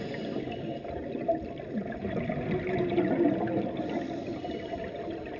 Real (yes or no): yes